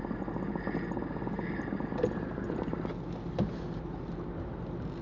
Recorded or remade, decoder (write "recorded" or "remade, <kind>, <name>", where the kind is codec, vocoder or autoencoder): recorded